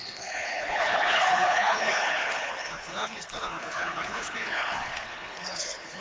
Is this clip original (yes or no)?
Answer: no